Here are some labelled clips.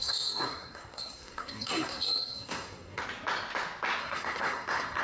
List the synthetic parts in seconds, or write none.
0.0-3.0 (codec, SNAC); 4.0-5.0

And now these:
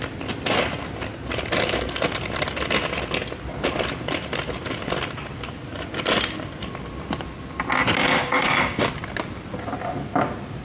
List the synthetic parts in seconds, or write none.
8.2-8.9 (codec, DAC)

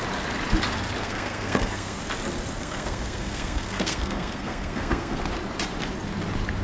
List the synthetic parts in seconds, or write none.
1.0-2.0 (codec, SNAC); 2.6-5.2

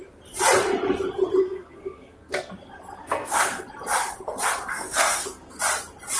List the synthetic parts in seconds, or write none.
1.4-2.5 (codec, SNAC); 3.0-3.6; 4.7-5.6